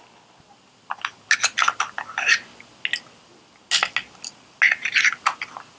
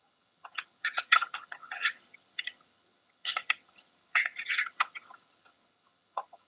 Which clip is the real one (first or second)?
first